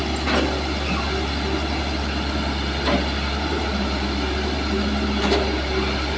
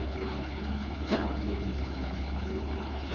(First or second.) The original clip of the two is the first